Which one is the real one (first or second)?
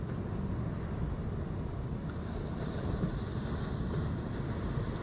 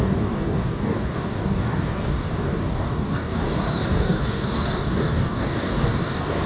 first